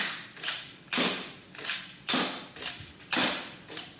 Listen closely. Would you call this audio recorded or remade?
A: recorded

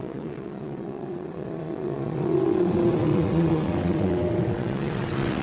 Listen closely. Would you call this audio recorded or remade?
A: remade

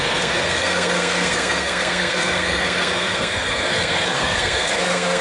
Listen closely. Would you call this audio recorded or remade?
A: remade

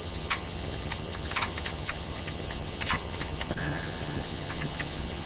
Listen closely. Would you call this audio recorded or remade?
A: remade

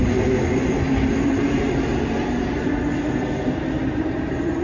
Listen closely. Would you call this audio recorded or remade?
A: remade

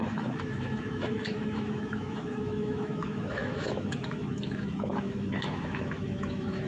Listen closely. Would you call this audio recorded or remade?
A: remade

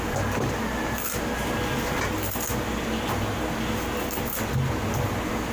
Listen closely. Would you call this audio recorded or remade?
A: recorded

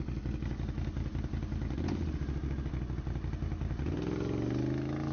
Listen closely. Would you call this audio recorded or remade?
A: recorded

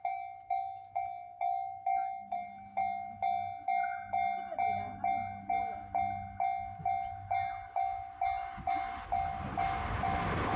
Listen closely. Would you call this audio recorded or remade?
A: recorded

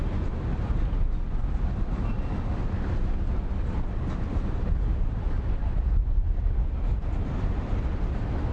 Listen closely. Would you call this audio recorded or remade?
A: recorded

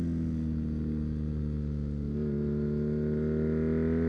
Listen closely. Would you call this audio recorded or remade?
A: recorded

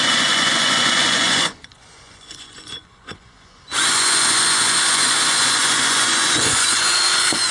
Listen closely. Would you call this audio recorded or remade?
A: remade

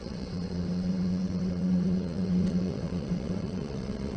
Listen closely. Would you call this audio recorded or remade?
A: remade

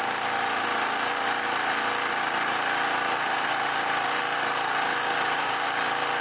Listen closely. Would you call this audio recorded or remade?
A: recorded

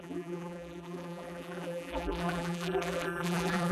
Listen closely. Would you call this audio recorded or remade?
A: remade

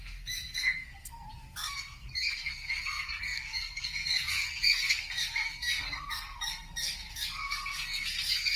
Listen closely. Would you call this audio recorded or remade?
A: remade